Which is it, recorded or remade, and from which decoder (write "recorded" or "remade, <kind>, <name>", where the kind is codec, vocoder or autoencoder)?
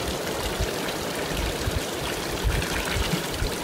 recorded